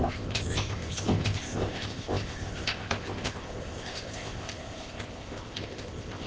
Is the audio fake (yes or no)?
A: yes